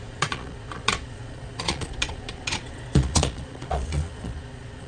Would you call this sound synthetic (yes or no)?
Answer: yes